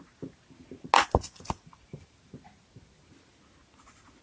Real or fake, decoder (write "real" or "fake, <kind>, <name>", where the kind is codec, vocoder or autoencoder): real